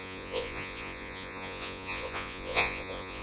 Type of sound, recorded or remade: remade